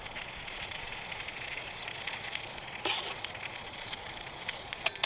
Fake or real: fake